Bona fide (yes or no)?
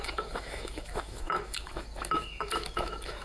no